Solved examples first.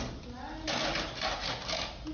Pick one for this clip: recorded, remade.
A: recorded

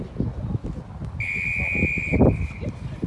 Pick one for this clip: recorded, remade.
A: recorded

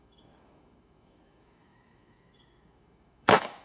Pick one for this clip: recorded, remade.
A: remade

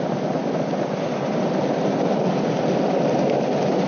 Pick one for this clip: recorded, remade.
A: recorded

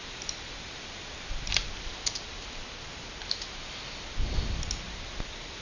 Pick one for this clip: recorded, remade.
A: recorded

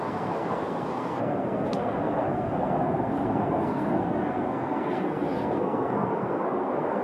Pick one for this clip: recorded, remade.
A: remade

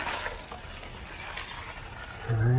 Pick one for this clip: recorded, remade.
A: recorded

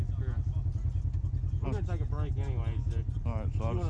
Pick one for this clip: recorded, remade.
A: recorded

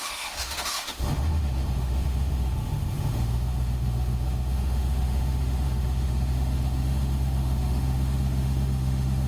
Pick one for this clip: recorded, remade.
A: remade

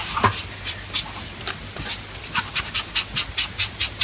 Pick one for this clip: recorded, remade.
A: recorded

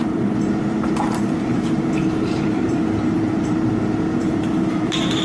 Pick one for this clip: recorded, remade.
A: remade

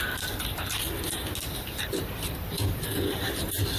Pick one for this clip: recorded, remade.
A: recorded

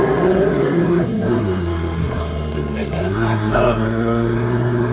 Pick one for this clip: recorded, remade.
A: remade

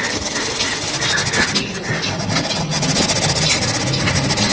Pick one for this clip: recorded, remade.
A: recorded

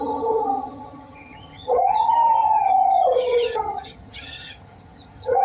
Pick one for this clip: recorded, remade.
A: remade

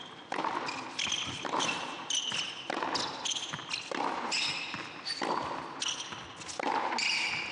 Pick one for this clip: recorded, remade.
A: recorded